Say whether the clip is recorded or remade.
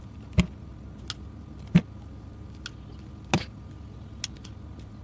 recorded